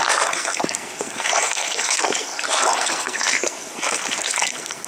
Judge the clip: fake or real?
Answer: fake